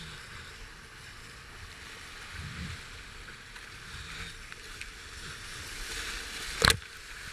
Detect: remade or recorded recorded